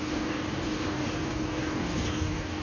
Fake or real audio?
fake